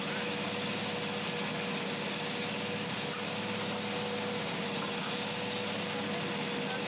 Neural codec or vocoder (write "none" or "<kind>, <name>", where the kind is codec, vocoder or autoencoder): none